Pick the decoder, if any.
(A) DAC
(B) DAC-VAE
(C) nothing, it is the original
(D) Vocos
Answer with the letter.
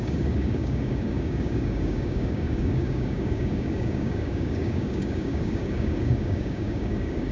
A